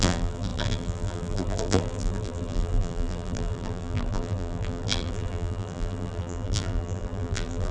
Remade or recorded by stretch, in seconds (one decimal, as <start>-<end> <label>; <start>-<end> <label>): 0.0-7.7 remade